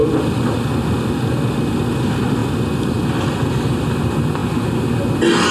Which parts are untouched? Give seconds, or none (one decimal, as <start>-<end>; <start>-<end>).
0.0-5.5